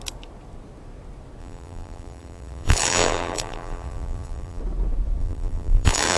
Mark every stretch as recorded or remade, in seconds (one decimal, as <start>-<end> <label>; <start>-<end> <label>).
0.0-1.4 recorded; 1.4-4.6 remade; 4.6-5.2 recorded; 5.2-6.2 remade